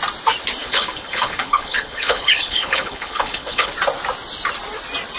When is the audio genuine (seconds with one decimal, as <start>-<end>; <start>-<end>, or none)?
0.0-0.6; 3.7-5.2